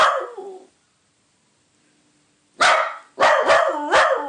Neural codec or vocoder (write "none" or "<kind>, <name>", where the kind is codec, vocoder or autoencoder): none